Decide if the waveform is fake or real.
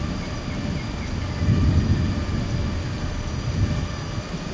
real